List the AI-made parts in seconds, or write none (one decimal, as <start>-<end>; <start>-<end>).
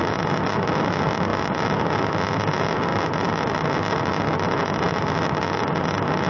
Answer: none